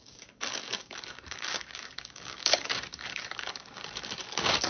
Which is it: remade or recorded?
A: remade